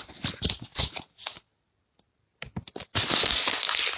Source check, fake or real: real